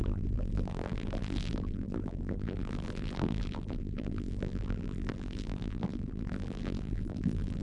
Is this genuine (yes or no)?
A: no